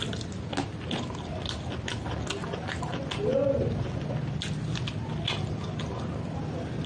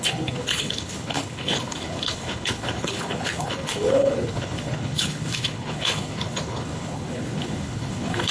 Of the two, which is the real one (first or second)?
first